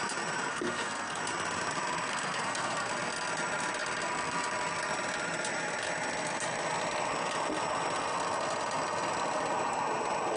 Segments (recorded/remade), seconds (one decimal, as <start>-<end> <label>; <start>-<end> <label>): 0.0-0.5 recorded; 0.5-1.2 remade; 1.2-2.1 recorded; 2.1-2.9 remade; 2.9-10.4 recorded